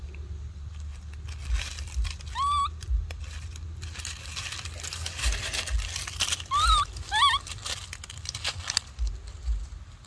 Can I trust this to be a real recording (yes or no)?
yes